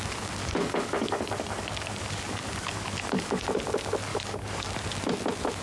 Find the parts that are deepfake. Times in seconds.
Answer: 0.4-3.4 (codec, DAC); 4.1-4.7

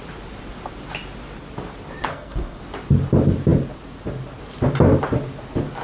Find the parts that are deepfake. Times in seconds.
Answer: 2.1-2.6 (codec, SNAC)

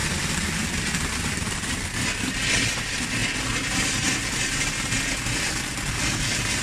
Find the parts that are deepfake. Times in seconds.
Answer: none

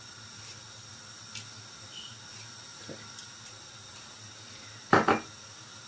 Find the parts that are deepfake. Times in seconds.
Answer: none

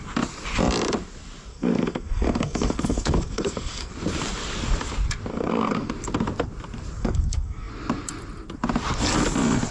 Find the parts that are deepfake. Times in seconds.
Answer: 1.5-3.9 (codec, SNAC); 5.3-5.9; 7.0-7.7

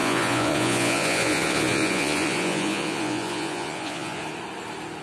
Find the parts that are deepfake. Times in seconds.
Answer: 0.0-4.2 (vocoder, Vocos)

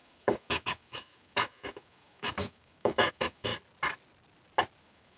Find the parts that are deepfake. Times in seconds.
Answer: 0.0-3.5 (autoencoder, DAC-VAE); 4.8-5.2

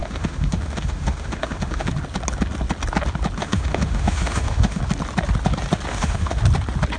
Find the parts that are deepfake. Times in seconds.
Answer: 0.0-1.9 (autoencoder, DAC-VAE); 3.4-4.8; 5.9-6.4